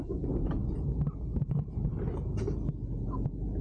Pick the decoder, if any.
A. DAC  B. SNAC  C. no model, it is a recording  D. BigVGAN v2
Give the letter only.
C